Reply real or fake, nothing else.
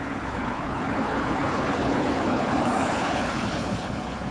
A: fake